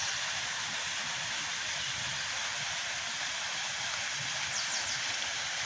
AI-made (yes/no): no